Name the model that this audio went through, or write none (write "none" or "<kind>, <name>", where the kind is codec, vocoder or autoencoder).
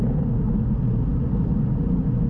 none